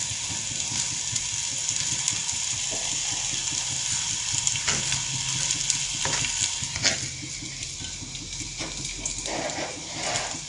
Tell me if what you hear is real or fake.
real